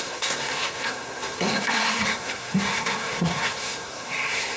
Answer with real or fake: fake